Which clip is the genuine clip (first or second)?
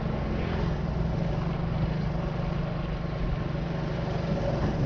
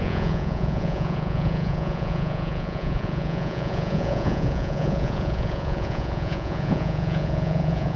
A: first